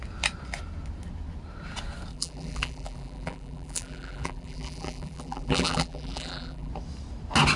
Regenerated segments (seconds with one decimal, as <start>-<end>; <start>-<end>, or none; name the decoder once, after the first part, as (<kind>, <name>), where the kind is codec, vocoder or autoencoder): 2.1-6.7 (vocoder, BigVGAN v2)